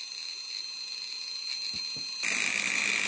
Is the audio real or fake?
real